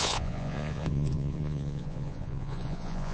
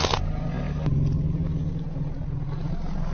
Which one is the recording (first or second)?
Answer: second